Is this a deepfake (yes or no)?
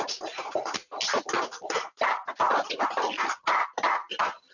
no